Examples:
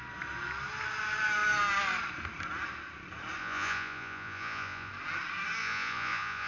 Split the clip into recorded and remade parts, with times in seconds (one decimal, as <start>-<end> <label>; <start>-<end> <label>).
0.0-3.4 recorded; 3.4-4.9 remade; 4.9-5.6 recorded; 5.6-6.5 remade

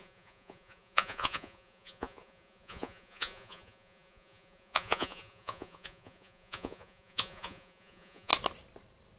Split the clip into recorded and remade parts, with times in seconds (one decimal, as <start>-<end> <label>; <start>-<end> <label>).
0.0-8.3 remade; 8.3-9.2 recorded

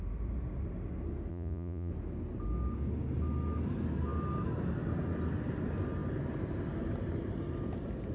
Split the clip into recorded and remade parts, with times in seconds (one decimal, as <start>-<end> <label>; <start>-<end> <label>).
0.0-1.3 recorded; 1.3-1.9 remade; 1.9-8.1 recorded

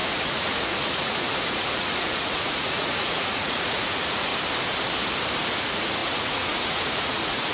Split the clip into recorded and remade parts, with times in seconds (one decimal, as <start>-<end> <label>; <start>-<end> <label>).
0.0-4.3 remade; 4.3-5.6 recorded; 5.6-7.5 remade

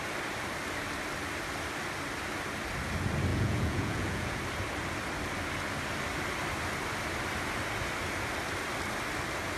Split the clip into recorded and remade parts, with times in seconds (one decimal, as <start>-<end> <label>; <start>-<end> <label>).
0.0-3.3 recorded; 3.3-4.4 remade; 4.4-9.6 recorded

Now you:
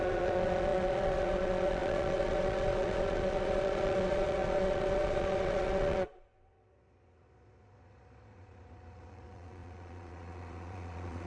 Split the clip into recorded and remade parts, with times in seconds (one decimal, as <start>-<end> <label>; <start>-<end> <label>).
0.0-11.3 remade

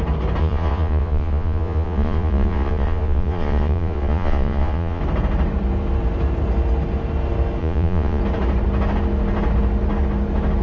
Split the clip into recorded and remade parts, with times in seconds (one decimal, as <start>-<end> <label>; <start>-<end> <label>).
0.0-0.4 recorded; 0.4-5.0 remade; 5.0-7.6 recorded; 7.6-8.2 remade; 8.2-10.6 recorded

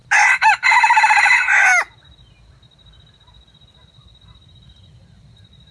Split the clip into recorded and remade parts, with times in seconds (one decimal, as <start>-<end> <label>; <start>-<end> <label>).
0.0-5.7 recorded